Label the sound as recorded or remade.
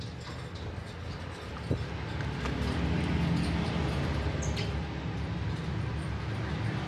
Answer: recorded